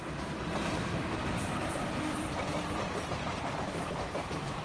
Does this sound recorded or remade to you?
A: remade